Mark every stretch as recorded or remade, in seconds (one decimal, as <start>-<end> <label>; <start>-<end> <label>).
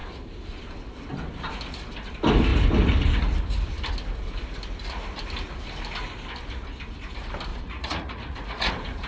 0.0-7.5 recorded; 7.5-8.7 remade; 8.7-9.1 recorded